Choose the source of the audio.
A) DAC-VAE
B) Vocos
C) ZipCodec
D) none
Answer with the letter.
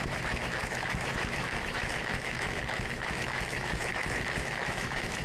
A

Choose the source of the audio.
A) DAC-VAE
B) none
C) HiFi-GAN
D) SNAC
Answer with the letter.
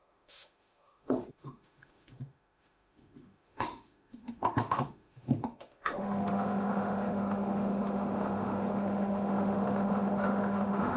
A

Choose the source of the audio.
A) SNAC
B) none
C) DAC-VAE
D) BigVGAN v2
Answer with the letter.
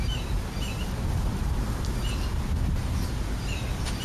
B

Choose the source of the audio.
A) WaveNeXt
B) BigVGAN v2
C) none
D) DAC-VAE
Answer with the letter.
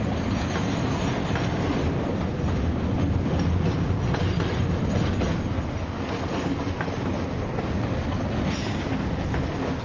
C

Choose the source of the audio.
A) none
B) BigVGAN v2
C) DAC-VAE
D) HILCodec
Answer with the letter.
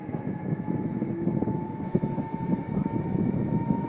C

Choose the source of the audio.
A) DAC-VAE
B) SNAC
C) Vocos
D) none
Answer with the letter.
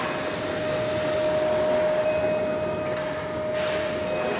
D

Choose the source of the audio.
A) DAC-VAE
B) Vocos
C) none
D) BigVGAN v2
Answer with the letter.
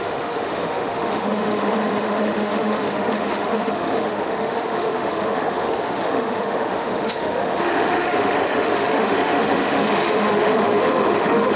A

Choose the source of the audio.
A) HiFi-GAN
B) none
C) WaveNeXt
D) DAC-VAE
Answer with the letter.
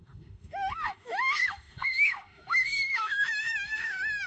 D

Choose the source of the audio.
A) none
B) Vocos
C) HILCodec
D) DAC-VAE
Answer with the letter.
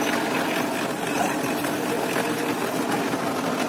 A